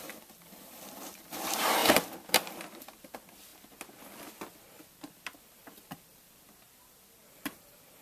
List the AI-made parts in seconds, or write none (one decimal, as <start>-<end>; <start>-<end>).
0.0-1.8; 2.8-3.5; 4.9-8.0